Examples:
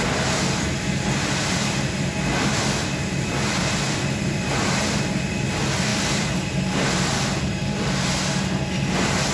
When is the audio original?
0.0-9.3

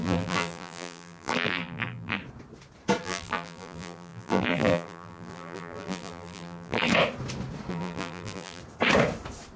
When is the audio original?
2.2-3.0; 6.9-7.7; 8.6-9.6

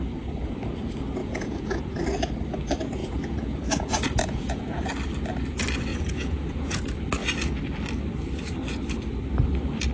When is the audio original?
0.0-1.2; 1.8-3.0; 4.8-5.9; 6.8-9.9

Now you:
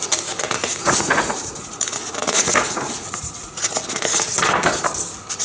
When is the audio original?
0.0-0.6; 3.8-5.4